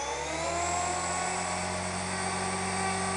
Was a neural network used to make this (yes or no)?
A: no